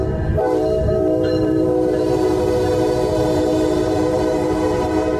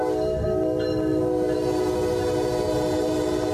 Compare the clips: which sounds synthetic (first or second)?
first